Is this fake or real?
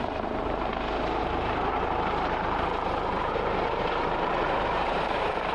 fake